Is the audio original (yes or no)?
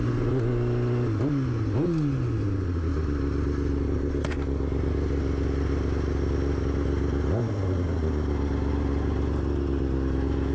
yes